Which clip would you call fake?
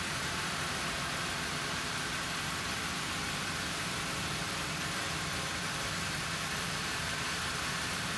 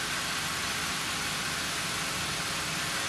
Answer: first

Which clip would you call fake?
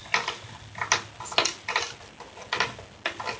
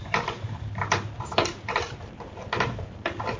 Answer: second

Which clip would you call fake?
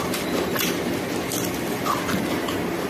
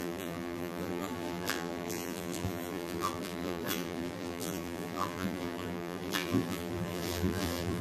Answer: second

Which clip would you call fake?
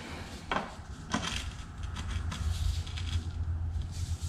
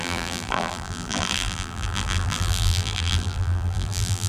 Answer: second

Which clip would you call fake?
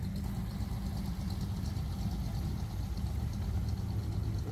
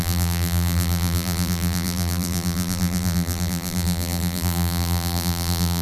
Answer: second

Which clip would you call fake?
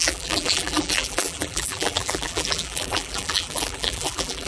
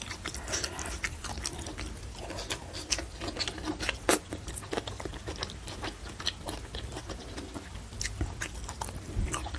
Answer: first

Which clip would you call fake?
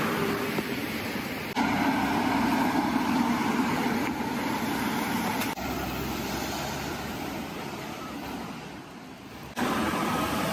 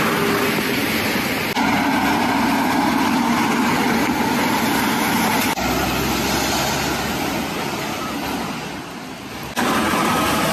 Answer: first